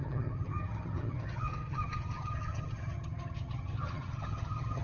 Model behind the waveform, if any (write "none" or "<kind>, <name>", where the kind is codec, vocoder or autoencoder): vocoder, HiFi-GAN